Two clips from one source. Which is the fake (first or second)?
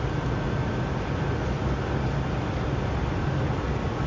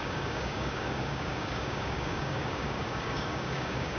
second